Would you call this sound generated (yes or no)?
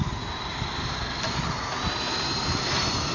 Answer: no